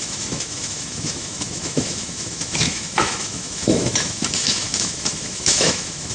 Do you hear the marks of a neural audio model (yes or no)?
yes